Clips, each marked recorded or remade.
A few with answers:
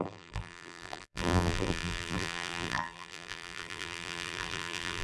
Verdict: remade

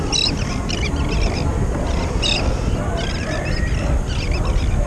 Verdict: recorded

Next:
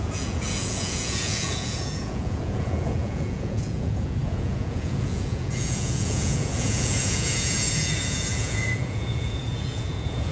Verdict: remade